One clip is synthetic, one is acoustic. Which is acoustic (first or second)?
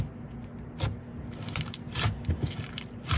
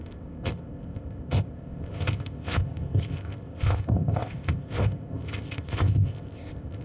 first